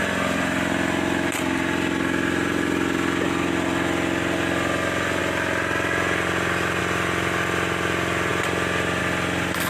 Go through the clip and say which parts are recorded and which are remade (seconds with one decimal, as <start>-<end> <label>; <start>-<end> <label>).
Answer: 0.0-9.7 recorded